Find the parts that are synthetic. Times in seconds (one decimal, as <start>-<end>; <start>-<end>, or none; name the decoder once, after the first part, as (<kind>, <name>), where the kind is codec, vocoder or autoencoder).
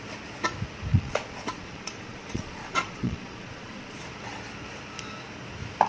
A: 0.9-4.0 (vocoder, Vocos)